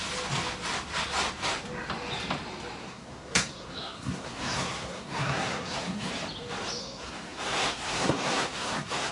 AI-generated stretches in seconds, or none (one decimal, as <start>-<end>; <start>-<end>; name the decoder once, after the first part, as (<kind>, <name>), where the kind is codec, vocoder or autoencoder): 2.8-6.1 (codec, SNAC); 6.8-9.1